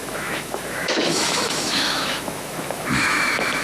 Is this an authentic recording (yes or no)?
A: no